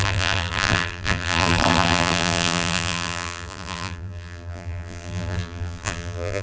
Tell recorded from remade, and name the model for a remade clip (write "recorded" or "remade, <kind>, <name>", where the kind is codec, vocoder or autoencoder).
remade, vocoder, BigVGAN v2